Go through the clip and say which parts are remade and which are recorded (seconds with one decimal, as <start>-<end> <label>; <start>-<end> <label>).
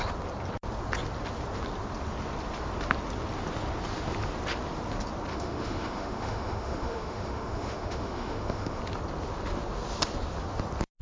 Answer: 0.0-5.3 recorded; 5.3-8.8 remade; 8.8-11.0 recorded